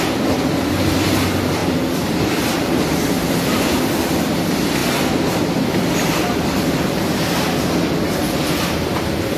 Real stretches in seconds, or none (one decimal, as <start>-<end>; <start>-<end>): 0.0-1.6; 3.3-4.8; 5.7-9.4